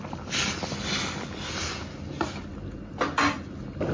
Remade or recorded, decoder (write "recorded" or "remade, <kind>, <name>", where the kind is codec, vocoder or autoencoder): recorded